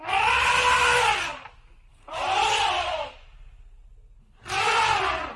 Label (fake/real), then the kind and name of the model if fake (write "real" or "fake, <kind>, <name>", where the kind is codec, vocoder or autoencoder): real